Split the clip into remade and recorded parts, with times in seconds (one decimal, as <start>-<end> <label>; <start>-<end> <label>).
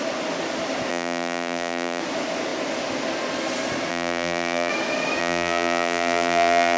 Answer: 0.0-0.9 recorded; 0.9-2.0 remade; 2.0-3.9 recorded; 3.9-4.7 remade; 4.7-5.2 recorded; 5.2-6.8 remade